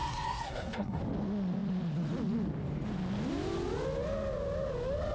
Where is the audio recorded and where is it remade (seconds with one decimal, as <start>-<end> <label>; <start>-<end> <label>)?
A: 0.0-1.0 remade; 1.0-5.1 recorded